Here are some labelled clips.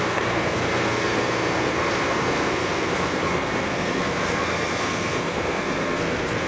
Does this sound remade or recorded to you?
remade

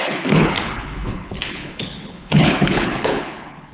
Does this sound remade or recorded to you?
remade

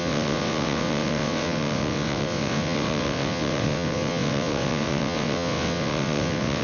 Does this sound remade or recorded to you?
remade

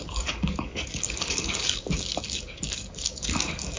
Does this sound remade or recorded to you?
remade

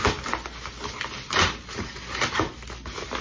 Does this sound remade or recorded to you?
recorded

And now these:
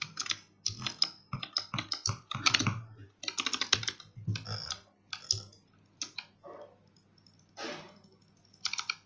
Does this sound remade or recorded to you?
recorded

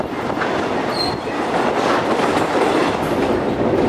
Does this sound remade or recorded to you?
recorded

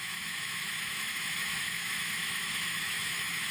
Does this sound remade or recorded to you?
remade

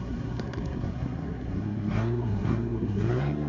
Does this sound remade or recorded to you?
remade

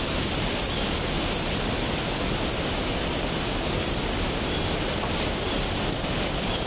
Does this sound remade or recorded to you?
recorded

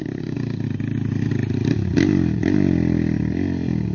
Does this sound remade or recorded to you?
recorded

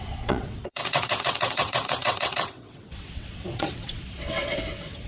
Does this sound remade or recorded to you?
remade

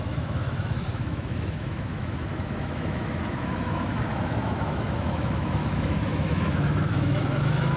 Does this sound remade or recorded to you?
remade